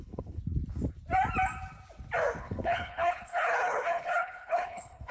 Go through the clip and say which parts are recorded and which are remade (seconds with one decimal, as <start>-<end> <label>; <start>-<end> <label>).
0.0-0.4 remade; 0.4-2.4 recorded; 2.4-5.1 remade